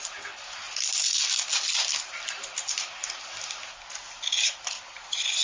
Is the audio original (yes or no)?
yes